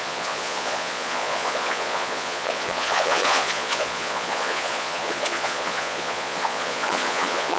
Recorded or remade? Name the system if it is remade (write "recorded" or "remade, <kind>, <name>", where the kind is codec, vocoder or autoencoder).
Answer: remade, vocoder, Vocos